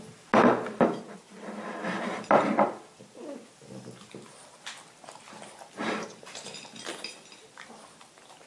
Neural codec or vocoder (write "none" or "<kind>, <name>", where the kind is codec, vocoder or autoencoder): none